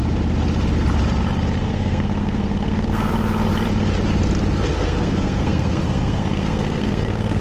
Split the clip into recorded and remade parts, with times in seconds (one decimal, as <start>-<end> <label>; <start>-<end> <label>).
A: 0.0-1.6 recorded; 1.6-3.1 remade; 3.1-4.7 recorded; 4.7-7.4 remade